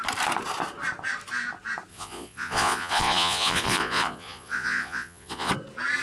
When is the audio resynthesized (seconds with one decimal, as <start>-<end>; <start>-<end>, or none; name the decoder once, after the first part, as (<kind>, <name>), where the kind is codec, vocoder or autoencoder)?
1.9-5.5 (vocoder, Vocos)